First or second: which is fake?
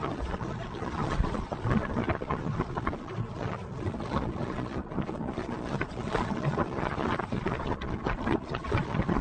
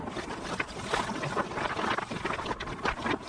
first